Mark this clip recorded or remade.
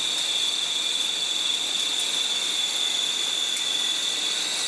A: recorded